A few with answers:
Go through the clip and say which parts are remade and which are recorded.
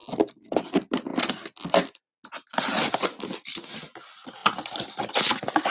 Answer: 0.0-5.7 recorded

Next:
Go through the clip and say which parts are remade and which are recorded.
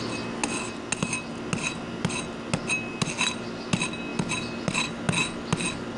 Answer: 0.0-6.0 recorded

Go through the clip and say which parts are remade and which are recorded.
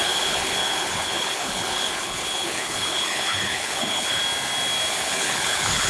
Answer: 0.0-4.2 remade; 4.2-4.9 recorded; 4.9-5.9 remade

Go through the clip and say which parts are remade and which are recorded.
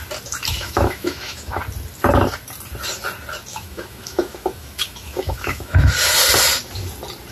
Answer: 0.0-0.5 recorded; 0.5-1.6 remade; 1.6-3.5 recorded; 3.5-5.9 remade; 5.9-7.3 recorded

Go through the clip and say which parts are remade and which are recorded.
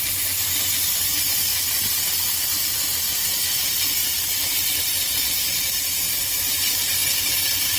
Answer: 0.0-1.5 remade; 1.5-3.0 recorded; 3.0-7.8 remade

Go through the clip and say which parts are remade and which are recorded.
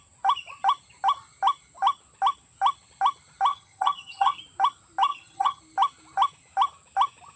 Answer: 0.0-3.5 recorded; 3.5-4.4 remade; 4.4-5.1 recorded; 5.1-5.6 remade; 5.6-7.4 recorded